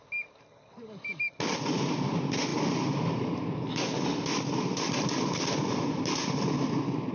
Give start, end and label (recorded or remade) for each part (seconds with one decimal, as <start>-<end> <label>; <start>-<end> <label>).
0.0-7.1 recorded